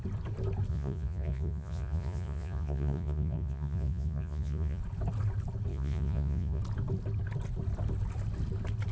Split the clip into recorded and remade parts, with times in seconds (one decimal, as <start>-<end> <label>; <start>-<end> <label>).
0.0-0.7 recorded; 0.7-4.8 remade; 4.8-5.7 recorded; 5.7-6.6 remade; 6.6-8.9 recorded